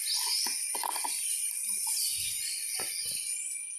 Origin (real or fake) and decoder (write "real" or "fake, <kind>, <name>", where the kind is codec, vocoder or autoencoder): real